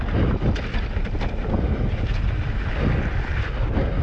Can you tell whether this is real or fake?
real